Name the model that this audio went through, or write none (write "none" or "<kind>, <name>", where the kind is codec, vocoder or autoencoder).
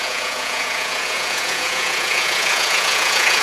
vocoder, Vocos